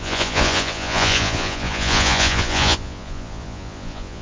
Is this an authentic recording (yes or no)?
no